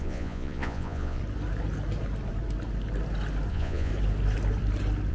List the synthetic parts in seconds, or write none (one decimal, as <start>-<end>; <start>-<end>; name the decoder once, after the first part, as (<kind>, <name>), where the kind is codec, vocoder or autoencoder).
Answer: 0.0-1.2 (vocoder, Vocos); 3.5-3.9